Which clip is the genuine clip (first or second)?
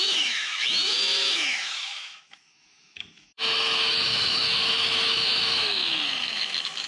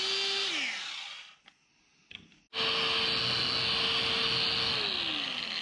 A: second